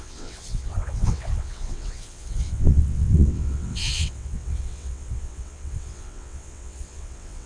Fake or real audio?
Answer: fake